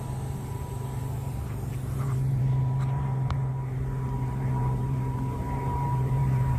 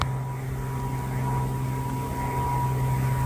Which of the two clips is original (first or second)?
second